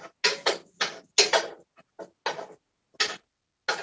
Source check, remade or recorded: recorded